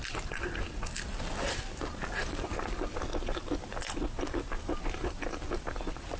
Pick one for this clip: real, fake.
real